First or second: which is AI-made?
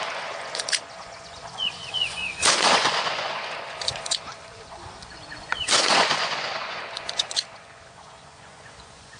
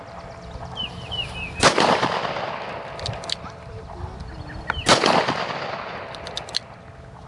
first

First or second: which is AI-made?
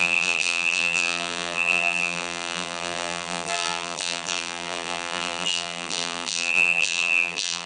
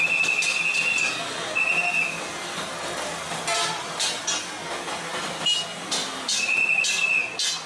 first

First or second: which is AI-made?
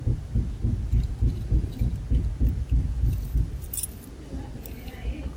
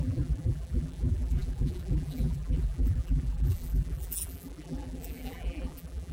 second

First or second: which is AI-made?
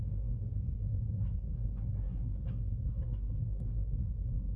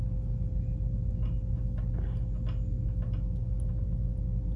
first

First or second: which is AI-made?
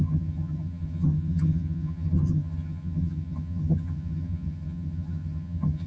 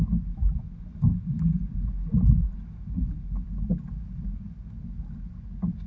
first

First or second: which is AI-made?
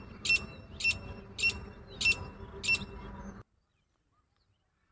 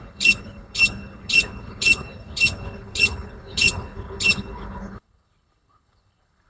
second